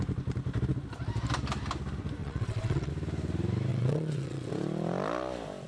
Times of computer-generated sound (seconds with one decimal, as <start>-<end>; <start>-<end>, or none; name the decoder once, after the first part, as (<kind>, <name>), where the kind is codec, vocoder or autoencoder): 2.2-2.9 (vocoder, WaveNeXt); 3.7-4.5